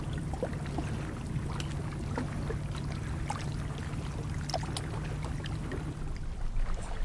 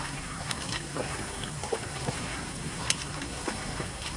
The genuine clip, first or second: first